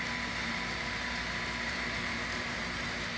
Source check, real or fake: fake